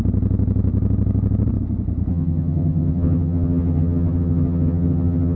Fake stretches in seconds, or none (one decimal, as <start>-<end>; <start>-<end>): 2.1-5.4